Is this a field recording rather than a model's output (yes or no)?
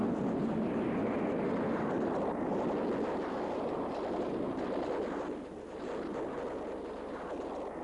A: yes